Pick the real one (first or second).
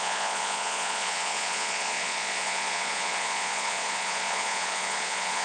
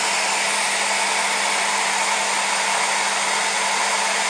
second